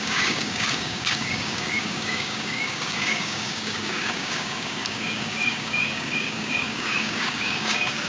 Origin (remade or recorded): remade